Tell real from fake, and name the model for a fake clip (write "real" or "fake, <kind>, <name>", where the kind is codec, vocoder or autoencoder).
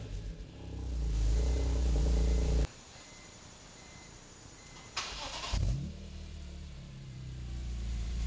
fake, vocoder, BigVGAN v2